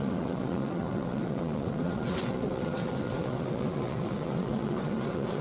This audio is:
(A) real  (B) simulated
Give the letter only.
B